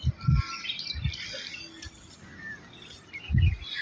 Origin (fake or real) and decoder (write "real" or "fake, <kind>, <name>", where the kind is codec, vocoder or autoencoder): real